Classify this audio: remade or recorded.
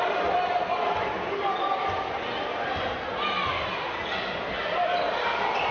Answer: recorded